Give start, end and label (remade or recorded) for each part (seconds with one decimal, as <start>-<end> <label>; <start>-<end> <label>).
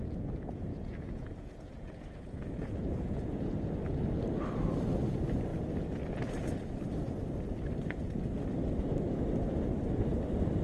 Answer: 0.0-0.7 recorded; 0.7-3.8 remade; 3.8-10.6 recorded